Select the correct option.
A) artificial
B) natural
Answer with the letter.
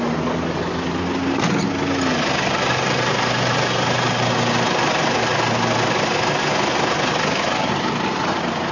B